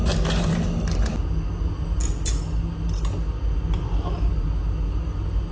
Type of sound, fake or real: real